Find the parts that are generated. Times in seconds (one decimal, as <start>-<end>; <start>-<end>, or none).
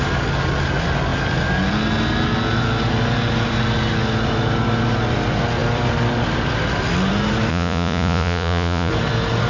7.5-8.9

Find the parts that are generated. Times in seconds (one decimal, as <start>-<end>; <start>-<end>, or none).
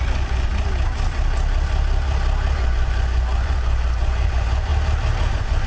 0.0-0.5; 2.6-4.7; 5.3-5.7